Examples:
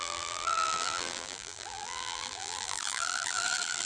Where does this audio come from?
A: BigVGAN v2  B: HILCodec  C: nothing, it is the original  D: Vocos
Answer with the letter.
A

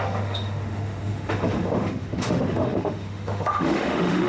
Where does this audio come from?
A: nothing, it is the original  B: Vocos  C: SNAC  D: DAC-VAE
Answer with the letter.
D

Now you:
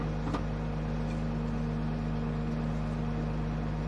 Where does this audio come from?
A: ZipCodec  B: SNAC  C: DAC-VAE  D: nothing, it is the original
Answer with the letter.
D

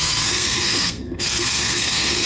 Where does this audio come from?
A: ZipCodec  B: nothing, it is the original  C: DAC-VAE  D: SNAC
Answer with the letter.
D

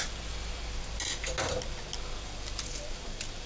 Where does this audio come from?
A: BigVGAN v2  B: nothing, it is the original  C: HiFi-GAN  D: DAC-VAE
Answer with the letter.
B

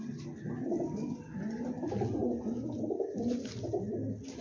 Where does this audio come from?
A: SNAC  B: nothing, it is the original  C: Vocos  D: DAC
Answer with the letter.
B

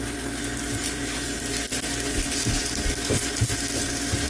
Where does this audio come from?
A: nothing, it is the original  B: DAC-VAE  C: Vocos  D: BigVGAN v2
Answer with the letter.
A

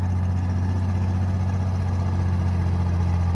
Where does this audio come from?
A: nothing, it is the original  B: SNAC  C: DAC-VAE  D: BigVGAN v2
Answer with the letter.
A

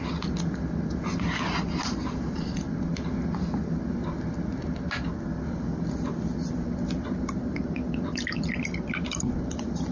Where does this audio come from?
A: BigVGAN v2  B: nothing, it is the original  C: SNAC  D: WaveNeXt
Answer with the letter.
B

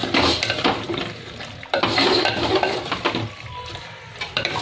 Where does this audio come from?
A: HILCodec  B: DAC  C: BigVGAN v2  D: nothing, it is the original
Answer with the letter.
C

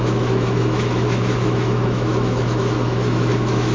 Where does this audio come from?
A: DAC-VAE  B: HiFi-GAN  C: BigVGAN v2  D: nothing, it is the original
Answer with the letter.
A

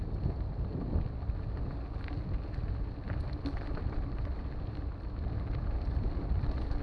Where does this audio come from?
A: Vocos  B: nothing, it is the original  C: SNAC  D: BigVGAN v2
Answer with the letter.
B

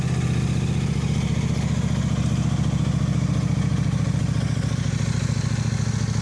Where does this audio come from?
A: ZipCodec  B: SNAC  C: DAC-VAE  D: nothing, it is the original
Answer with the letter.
D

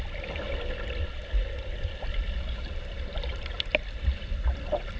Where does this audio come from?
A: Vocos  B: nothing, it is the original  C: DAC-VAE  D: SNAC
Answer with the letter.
B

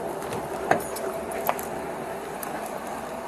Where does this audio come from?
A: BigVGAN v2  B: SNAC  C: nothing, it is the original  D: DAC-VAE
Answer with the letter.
A